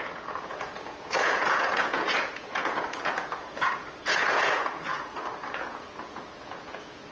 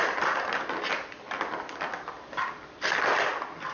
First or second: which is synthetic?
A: first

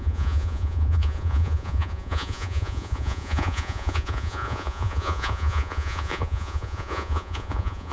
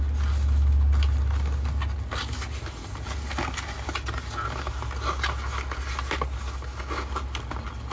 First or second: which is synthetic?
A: first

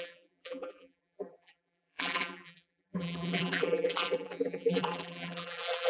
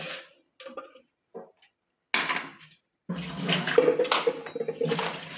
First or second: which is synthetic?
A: first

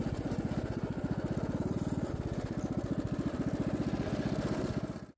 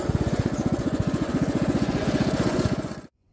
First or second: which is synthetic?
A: second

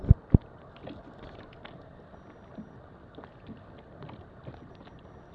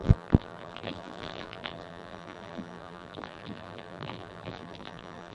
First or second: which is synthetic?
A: second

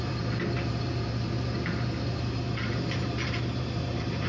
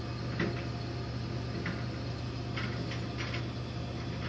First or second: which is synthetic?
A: first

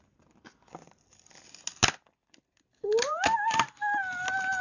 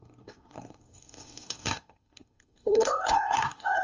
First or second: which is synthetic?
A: second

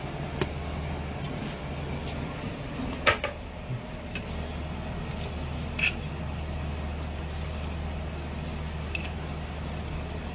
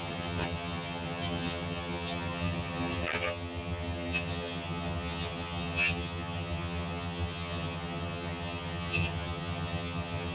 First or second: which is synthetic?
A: second